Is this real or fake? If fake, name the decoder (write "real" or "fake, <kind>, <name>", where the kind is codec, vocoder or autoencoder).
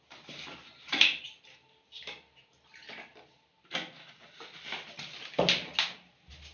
real